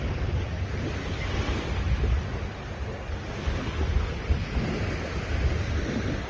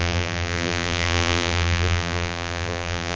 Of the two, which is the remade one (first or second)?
second